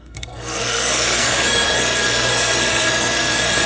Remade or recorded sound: remade